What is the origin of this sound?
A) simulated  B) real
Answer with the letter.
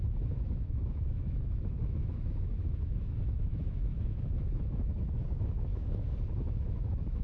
A